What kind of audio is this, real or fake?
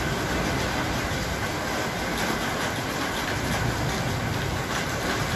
real